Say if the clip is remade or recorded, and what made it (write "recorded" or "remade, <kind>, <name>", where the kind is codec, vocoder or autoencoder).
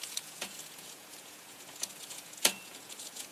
remade, vocoder, Vocos